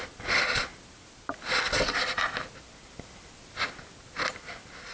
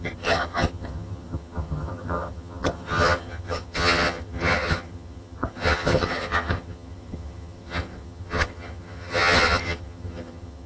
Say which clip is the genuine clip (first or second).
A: first